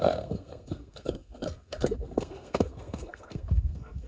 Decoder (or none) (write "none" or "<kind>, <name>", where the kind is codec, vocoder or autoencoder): codec, SNAC